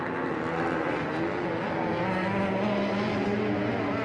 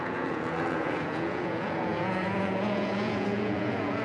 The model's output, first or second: second